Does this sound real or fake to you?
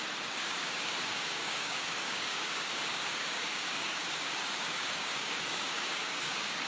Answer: fake